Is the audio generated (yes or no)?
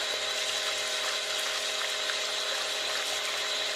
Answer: no